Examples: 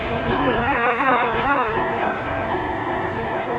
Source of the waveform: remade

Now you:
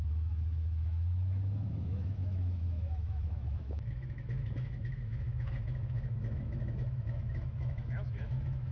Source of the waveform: remade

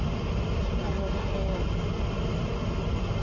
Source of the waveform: recorded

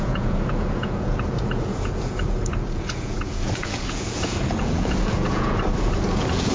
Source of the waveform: remade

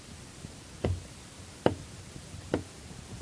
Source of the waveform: recorded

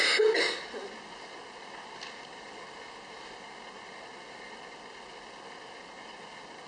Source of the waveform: recorded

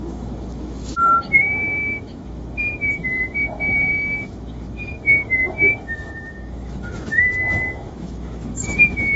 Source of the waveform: remade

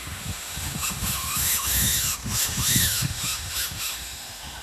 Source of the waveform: remade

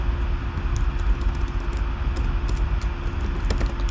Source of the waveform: recorded